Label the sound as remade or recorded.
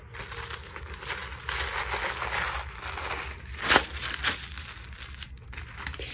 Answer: recorded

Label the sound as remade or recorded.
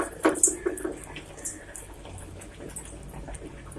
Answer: recorded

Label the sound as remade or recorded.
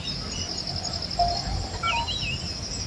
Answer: recorded